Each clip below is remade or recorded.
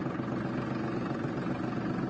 recorded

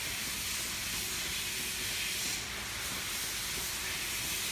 recorded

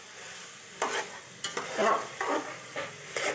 recorded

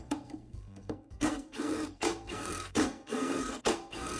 remade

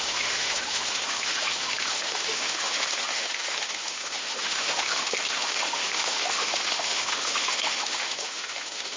remade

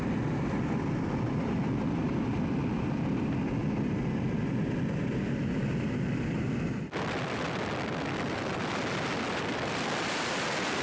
recorded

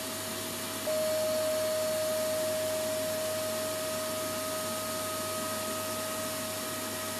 recorded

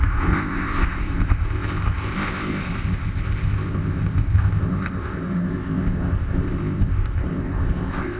remade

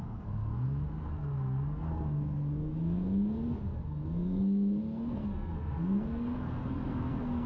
remade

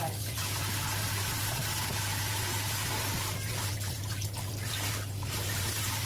recorded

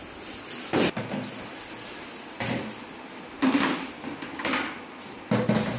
recorded